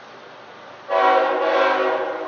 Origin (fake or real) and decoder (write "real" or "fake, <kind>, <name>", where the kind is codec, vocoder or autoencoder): real